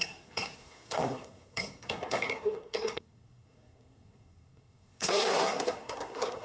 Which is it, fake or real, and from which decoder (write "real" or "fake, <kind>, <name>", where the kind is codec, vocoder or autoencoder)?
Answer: fake, codec, SNAC